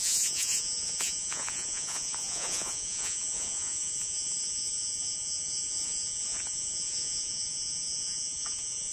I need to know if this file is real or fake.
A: fake